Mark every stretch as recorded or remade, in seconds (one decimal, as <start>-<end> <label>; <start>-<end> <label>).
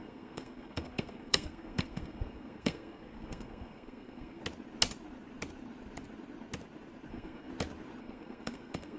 0.0-4.4 remade; 4.4-7.1 recorded; 7.1-7.5 remade; 7.5-8.0 recorded; 8.0-9.0 remade